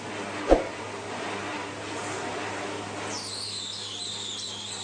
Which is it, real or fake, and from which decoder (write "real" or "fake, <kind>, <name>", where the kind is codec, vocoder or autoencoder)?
real